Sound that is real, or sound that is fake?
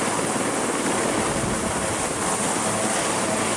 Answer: real